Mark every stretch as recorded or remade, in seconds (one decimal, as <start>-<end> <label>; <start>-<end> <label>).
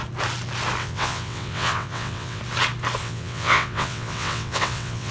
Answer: 0.0-0.8 recorded; 0.8-2.4 remade; 2.4-3.0 recorded; 3.0-5.1 remade